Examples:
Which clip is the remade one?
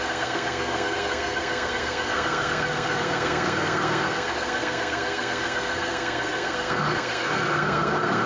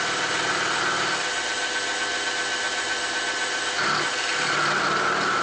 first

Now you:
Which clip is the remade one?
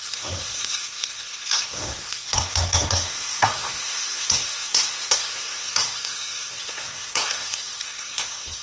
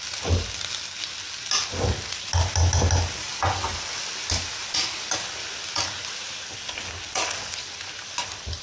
first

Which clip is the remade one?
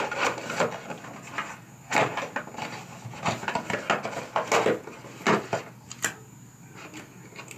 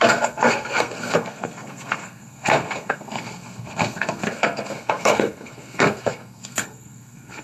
second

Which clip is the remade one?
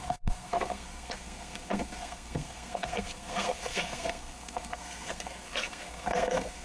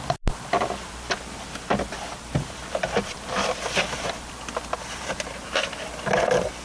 first